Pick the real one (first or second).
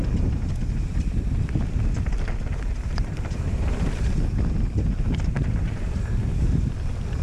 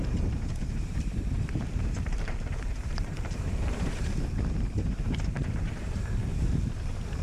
first